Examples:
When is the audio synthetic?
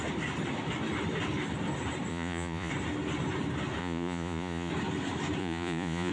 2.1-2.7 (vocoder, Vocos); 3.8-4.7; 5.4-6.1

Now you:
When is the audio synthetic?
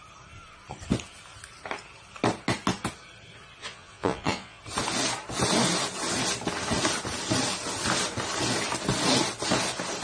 3.6-4.6 (vocoder, Vocos)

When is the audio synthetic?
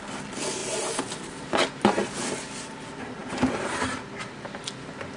none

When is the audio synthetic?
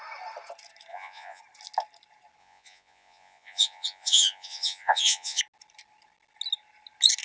0.9-1.4 (vocoder, Vocos); 2.4-5.4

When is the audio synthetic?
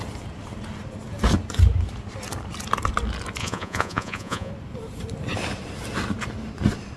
3.4-4.5 (vocoder, Vocos)